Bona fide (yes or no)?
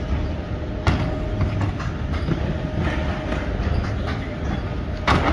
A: yes